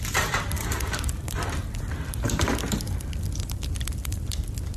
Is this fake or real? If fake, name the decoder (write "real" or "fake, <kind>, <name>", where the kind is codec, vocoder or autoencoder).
real